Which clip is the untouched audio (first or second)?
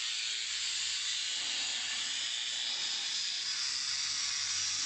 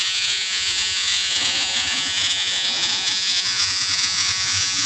first